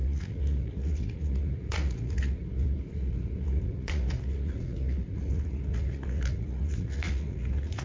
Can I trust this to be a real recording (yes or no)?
no